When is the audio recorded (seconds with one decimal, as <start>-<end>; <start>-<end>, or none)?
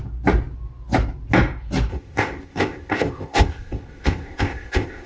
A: 0.0-1.9